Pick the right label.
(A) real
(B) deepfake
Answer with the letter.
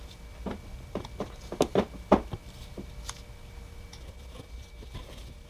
A